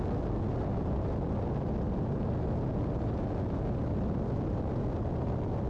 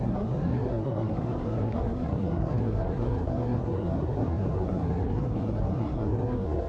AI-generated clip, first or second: second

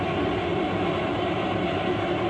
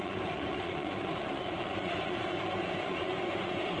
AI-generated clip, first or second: second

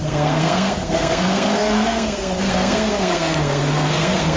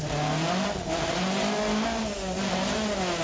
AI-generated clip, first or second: first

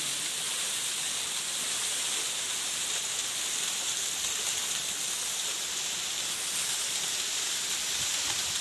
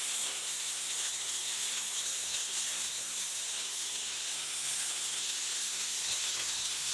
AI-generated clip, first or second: second